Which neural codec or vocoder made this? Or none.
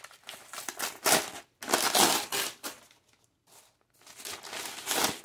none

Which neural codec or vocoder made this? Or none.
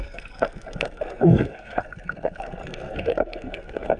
codec, SNAC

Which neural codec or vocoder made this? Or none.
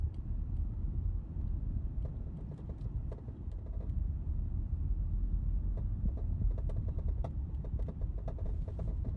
none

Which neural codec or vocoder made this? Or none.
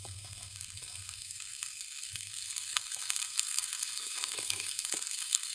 codec, SNAC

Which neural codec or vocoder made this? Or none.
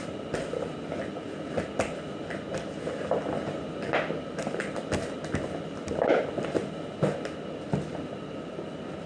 none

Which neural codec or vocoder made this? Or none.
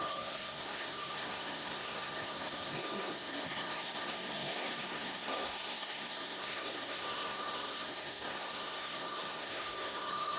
codec, SNAC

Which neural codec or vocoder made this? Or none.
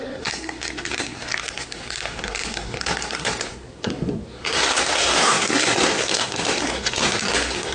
codec, SNAC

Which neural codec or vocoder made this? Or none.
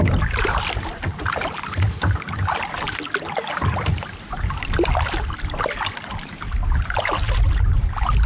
none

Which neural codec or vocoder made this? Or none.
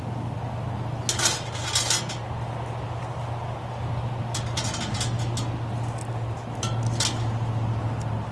none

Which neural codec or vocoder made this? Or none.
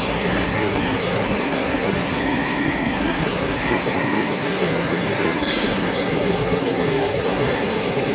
codec, SNAC